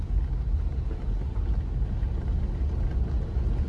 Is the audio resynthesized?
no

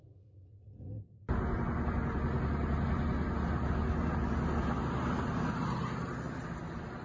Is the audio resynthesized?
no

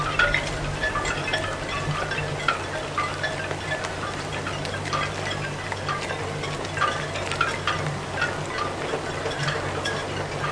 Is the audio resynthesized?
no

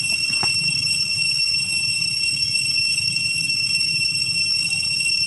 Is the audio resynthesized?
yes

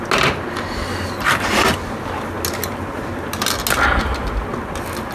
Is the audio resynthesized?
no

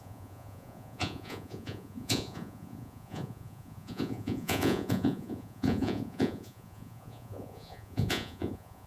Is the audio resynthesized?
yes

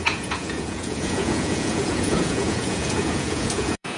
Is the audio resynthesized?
yes